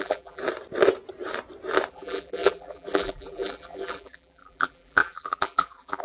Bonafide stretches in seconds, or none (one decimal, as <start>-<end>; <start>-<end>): 0.4-1.9